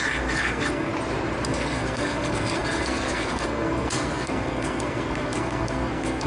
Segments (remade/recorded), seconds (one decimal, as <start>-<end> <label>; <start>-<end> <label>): 0.0-0.9 remade; 0.9-1.5 recorded; 1.5-6.3 remade